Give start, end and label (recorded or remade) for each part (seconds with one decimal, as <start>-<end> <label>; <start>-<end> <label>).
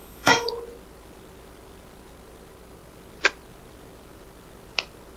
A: 0.0-0.5 remade; 0.5-5.2 recorded